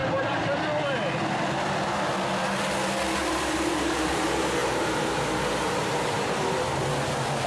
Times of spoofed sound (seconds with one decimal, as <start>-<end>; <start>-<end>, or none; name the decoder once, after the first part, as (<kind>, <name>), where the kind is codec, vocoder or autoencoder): 3.2-4.1 (vocoder, BigVGAN v2); 4.6-6.8